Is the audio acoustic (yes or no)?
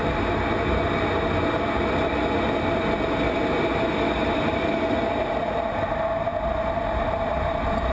yes